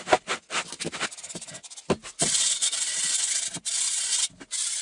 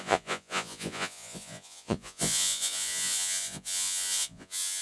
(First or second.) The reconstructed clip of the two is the second